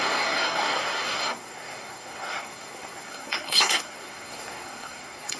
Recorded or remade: remade